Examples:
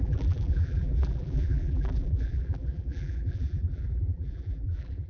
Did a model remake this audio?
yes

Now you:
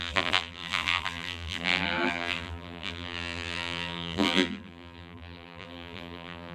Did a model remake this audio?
yes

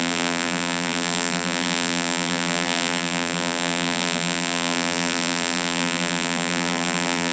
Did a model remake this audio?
yes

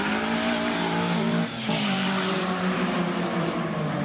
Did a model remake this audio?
yes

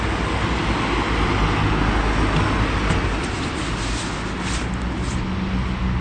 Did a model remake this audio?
no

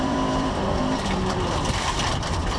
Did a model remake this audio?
yes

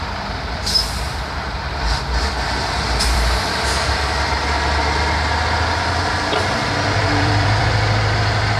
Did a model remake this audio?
yes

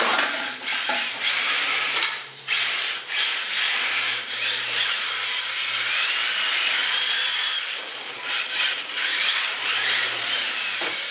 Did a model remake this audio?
yes